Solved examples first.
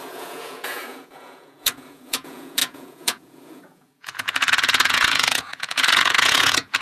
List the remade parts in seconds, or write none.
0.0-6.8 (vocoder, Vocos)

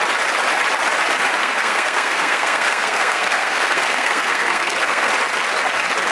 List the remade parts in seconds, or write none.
1.4-5.1 (codec, SNAC)

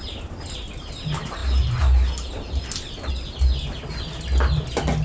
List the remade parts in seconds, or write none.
none

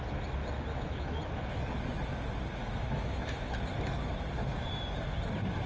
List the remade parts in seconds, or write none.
0.7-1.2 (autoencoder, DAC-VAE); 2.6-3.5

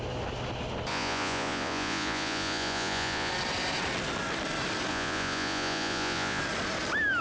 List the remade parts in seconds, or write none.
0.9-3.3 (vocoder, Vocos); 4.9-6.4

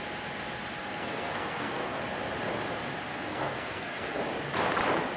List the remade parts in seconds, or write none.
0.8-2.0 (codec, SNAC); 3.1-4.2